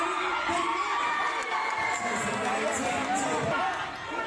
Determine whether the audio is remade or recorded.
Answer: recorded